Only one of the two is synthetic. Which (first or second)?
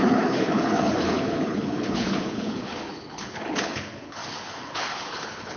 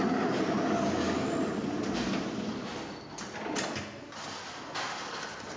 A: first